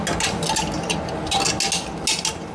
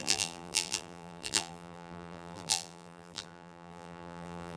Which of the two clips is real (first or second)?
first